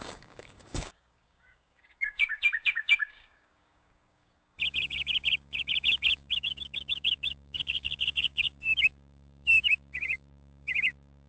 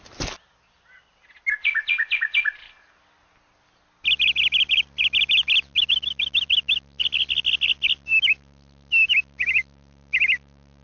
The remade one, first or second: first